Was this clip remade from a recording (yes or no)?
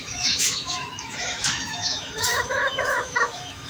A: yes